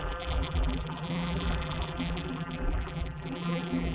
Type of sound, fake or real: fake